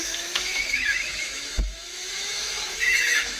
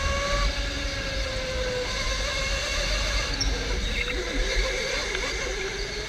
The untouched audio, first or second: second